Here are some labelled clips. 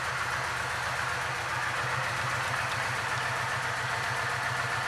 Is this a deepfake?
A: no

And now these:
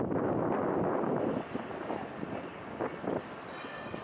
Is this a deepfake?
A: no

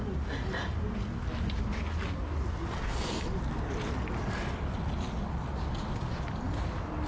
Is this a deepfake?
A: no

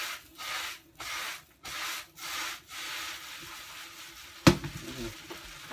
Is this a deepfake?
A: no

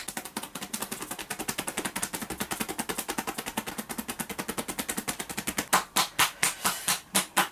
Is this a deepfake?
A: no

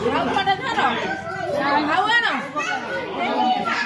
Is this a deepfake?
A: no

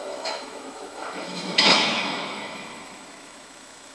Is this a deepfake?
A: yes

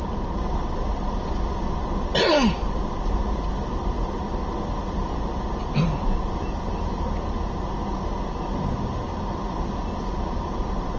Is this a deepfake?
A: no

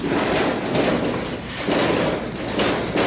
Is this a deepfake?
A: no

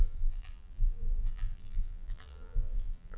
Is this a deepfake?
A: yes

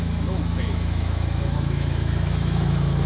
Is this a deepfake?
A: yes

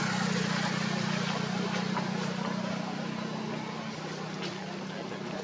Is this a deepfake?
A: no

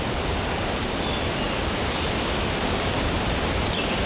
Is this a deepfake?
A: no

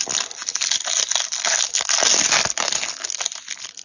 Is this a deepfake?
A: no